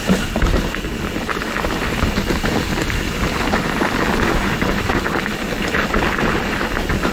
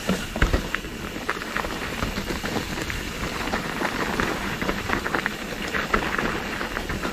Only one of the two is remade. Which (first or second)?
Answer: second